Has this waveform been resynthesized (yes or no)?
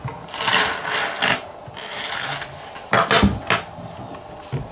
no